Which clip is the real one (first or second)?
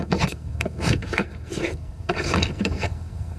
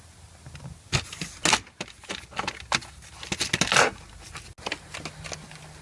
second